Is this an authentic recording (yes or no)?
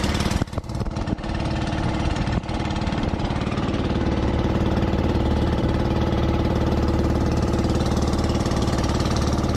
no